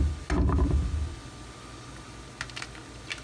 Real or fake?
real